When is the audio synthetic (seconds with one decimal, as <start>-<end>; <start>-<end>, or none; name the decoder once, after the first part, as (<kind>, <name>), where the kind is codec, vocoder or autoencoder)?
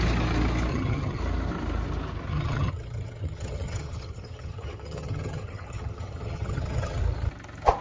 0.7-1.2 (vocoder, HiFi-GAN); 2.3-7.0